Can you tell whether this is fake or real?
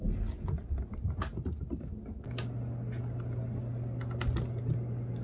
real